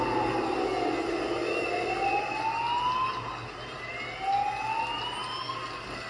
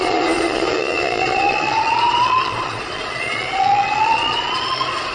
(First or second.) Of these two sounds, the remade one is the second